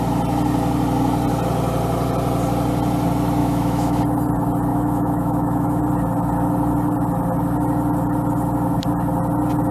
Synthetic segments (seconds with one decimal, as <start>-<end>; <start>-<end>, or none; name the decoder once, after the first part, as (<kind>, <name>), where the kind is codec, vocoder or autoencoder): 3.4-4.0 (autoencoder, DAC-VAE); 4.7-5.8